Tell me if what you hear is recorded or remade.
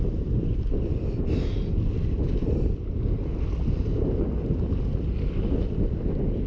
recorded